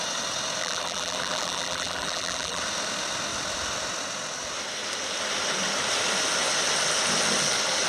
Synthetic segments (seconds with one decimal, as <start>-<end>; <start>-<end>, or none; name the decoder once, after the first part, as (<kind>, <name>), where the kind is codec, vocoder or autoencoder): 0.6-2.6 (vocoder, BigVGAN v2)